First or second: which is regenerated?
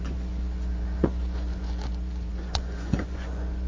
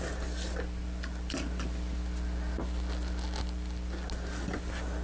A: first